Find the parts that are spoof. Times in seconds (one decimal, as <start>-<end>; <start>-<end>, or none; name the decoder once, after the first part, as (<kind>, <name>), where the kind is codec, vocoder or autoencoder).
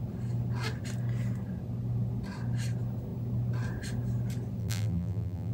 4.6-5.5 (vocoder, BigVGAN v2)